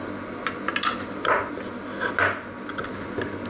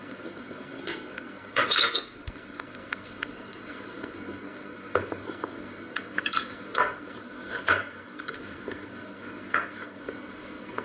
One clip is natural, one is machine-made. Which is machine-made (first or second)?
second